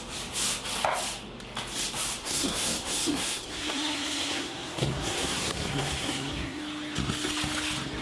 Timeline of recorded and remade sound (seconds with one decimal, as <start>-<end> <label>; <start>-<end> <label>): 0.0-2.2 recorded; 2.2-6.6 remade; 6.6-8.0 recorded